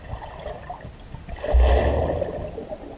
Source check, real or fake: real